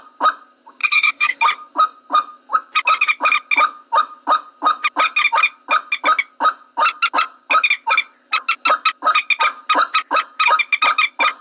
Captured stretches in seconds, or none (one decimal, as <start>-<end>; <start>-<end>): 0.0-0.8; 1.4-11.4